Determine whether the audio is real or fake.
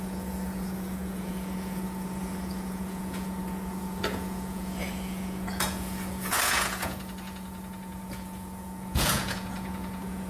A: fake